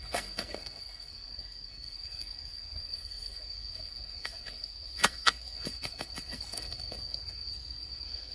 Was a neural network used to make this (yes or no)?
yes